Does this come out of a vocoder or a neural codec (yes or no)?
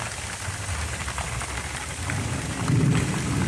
no